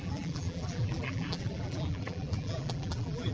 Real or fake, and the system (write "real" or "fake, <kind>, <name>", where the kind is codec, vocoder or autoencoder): fake, vocoder, BigVGAN v2